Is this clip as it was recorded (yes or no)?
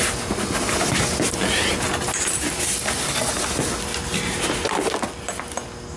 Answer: yes